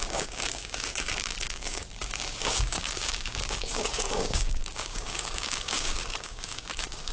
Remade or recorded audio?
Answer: remade